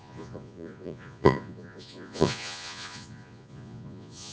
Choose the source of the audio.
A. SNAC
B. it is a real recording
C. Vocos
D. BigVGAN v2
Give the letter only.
C